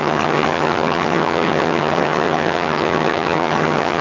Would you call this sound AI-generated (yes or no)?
yes